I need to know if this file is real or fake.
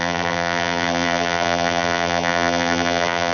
fake